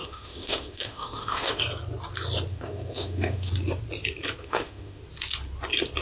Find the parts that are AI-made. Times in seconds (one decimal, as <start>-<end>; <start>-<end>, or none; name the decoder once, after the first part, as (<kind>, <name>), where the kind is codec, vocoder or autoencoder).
0.0-1.6 (autoencoder, DAC-VAE); 2.5-3.5; 4.4-5.0